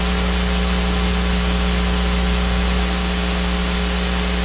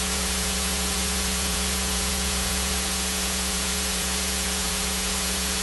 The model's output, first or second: second